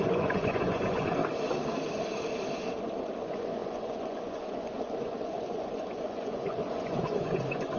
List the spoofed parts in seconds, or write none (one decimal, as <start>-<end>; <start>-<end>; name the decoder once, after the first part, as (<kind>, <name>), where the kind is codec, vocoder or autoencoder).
0.0-1.2 (vocoder, Vocos); 3.2-7.8